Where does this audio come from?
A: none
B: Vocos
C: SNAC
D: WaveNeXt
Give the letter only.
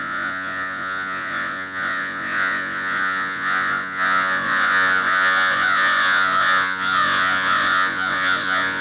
B